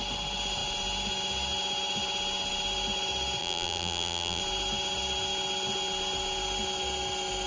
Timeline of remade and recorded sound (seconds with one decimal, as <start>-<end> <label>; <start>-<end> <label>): 0.0-3.4 recorded; 3.4-4.4 remade; 4.4-7.5 recorded

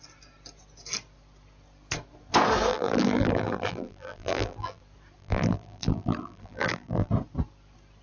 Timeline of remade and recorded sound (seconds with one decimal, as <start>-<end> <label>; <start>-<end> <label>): 0.0-2.7 recorded; 2.7-4.8 remade; 4.8-5.2 recorded; 5.2-7.1 remade; 7.1-8.0 recorded

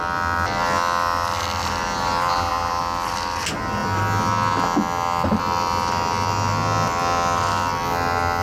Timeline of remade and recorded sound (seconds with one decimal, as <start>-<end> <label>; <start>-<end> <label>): 0.0-1.6 recorded; 1.6-2.8 remade; 2.8-8.4 recorded

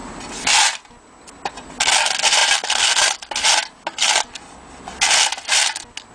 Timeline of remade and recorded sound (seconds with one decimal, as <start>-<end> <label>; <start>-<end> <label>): 0.0-6.1 recorded

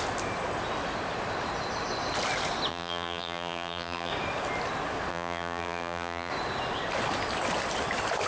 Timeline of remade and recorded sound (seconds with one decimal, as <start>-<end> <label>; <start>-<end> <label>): 0.0-2.7 recorded; 2.7-4.1 remade; 4.1-5.1 recorded; 5.1-6.3 remade; 6.3-8.3 recorded

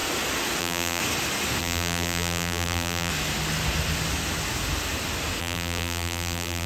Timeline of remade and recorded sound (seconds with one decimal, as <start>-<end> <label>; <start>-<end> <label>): 0.0-0.6 recorded; 0.6-1.0 remade; 1.0-1.6 recorded; 1.6-3.1 remade; 3.1-5.4 recorded; 5.4-6.7 remade

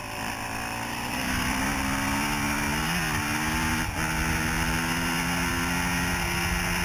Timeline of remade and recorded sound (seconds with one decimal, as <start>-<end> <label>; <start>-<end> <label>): 0.0-1.6 remade; 1.6-6.8 recorded

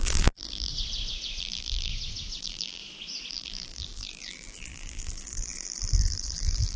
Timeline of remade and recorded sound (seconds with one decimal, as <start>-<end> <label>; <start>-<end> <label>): 0.0-0.7 remade; 0.7-1.4 recorded; 1.4-1.9 remade; 1.9-2.4 recorded; 2.4-2.8 remade; 2.8-3.3 recorded; 3.3-6.8 remade